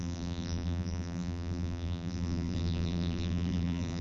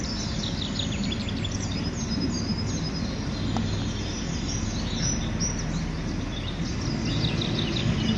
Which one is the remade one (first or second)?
first